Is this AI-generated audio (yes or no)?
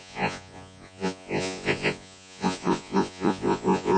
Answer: yes